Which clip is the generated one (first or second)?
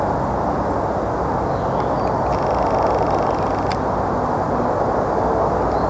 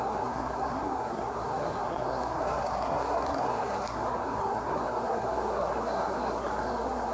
second